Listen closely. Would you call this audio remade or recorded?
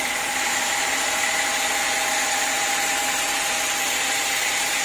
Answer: remade